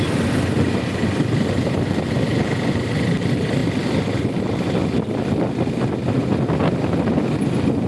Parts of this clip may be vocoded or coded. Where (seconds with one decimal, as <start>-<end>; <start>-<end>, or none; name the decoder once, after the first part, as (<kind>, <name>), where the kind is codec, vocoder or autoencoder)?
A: none

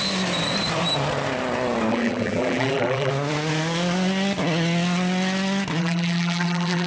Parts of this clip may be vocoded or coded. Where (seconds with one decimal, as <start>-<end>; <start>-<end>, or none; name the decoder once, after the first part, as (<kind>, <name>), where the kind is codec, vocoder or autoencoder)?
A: 1.9-3.1 (vocoder, BigVGAN v2); 5.8-6.9

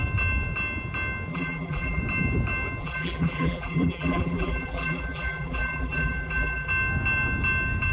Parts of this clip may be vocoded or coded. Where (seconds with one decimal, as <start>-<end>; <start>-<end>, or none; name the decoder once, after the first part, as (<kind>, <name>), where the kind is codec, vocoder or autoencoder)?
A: 1.3-2.0 (vocoder, BigVGAN v2); 2.8-6.7

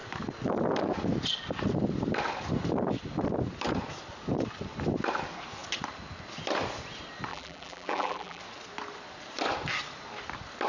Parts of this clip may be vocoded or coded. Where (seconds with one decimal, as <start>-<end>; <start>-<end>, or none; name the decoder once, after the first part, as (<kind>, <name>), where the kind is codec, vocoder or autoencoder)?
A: 7.3-8.4 (vocoder, BigVGAN v2)

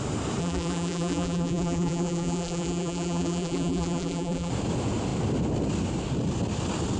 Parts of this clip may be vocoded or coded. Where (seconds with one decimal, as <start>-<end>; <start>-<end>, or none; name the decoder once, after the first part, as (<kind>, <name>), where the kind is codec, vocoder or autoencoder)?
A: 0.4-4.5 (vocoder, BigVGAN v2)

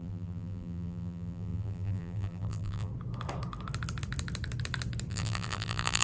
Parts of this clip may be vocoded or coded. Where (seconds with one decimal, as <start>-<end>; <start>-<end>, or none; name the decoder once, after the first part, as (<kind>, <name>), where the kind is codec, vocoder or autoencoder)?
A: 0.0-2.9 (vocoder, BigVGAN v2); 5.1-6.0

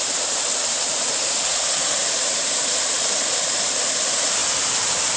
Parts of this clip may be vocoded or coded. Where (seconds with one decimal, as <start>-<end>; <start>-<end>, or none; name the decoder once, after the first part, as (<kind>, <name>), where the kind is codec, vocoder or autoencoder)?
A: 0.6-3.7 (vocoder, BigVGAN v2); 4.4-5.2

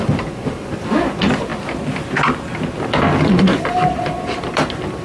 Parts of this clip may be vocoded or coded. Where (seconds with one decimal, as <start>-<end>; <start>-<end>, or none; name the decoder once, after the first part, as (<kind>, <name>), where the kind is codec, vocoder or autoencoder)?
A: 0.0-1.5 (vocoder, BigVGAN v2); 3.2-5.0